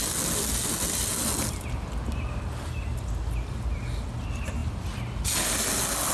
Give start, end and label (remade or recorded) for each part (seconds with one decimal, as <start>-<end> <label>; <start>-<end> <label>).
0.0-6.1 recorded